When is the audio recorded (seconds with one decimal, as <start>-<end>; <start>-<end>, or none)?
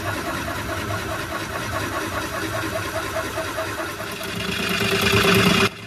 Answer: 0.0-5.9